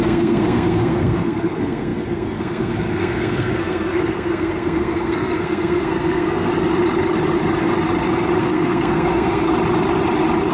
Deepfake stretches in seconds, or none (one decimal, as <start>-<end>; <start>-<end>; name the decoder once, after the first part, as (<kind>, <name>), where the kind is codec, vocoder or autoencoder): 0.0-6.5 (codec, SNAC); 8.4-9.5